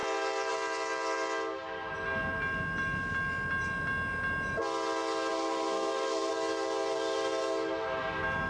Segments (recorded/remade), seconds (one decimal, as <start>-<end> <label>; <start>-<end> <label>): 0.0-5.3 recorded; 5.3-6.3 remade; 6.3-8.5 recorded